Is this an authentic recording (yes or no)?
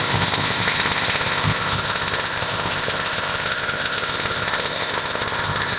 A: no